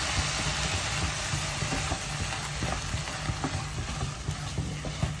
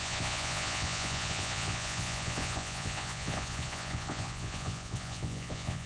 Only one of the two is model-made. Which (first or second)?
second